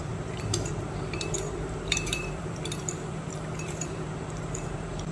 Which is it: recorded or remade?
remade